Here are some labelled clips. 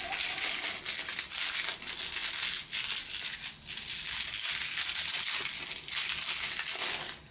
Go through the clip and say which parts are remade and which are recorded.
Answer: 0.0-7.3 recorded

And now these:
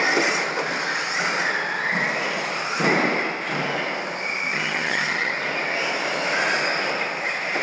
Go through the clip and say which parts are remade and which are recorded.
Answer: 0.0-4.5 recorded; 4.5-5.3 remade; 5.3-7.6 recorded